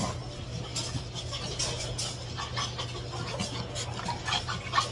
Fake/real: real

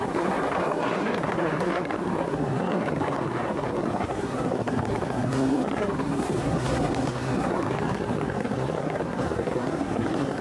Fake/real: fake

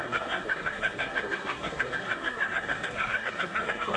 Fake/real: fake